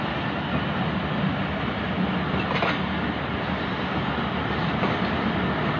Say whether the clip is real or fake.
real